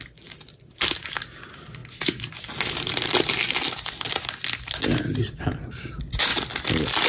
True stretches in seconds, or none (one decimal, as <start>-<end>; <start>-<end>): 0.0-7.1

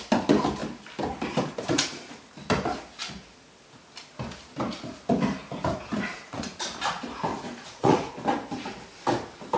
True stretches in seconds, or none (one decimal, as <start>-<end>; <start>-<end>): 0.0-6.1; 6.6-7.3; 8.1-9.6

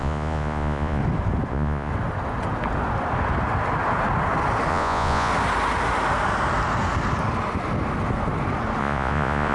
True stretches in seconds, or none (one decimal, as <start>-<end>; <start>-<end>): 1.0-1.5; 1.9-4.7; 5.3-8.8

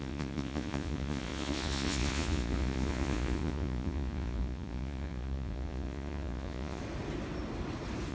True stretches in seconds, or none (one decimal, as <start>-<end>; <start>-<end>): 6.8-8.1

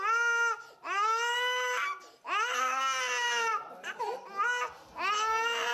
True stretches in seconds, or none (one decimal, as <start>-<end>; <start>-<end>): 0.0-3.5; 4.0-5.7

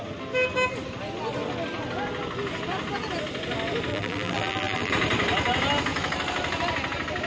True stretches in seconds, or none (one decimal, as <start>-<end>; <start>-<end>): 0.0-3.9; 4.9-7.3

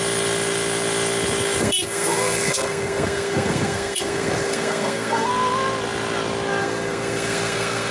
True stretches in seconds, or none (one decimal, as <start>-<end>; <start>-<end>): 0.0-1.6; 5.3-6.6

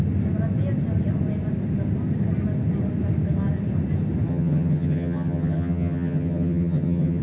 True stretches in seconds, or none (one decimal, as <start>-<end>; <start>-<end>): 0.0-4.3